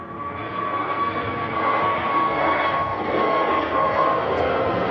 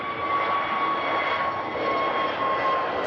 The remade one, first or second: first